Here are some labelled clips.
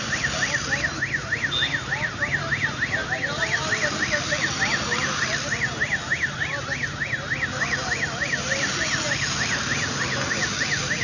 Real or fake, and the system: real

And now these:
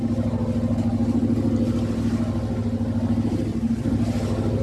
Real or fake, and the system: real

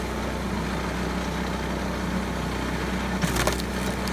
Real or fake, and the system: real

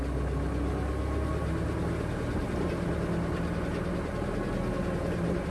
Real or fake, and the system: real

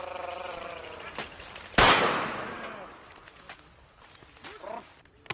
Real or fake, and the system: real